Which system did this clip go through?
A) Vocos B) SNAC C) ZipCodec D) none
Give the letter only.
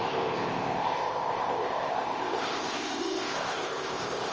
C